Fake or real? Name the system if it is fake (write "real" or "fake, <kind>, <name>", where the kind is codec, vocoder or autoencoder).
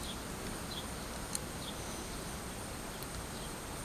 real